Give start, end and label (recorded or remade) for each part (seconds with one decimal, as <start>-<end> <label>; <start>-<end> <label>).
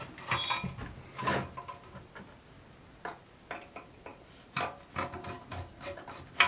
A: 0.0-6.5 recorded